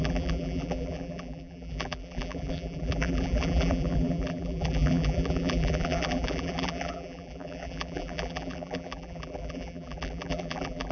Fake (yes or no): yes